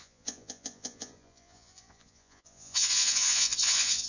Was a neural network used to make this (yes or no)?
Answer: yes